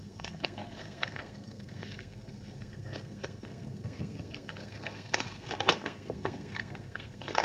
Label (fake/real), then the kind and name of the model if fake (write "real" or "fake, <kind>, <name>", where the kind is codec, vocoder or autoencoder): fake, codec, SNAC